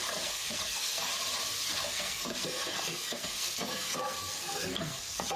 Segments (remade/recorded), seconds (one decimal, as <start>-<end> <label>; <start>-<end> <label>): 0.0-1.1 remade; 1.1-1.7 recorded; 1.7-5.4 remade